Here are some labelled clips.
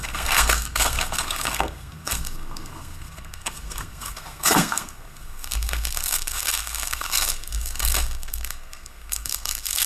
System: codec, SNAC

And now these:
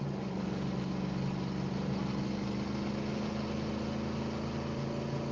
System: none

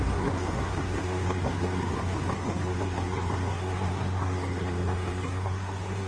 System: codec, SNAC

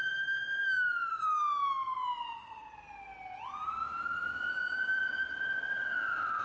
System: none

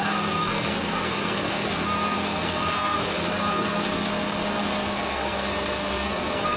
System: codec, SNAC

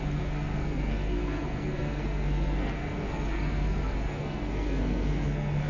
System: codec, SNAC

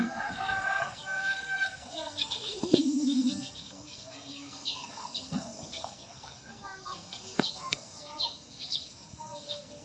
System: codec, SNAC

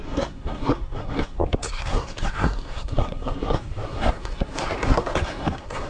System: codec, SNAC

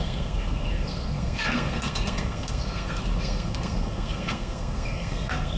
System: codec, SNAC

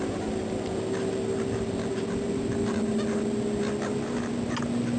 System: none